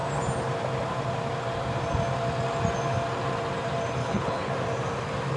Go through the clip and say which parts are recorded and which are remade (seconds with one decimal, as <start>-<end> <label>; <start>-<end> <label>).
0.0-4.0 recorded; 4.0-4.5 remade; 4.5-5.4 recorded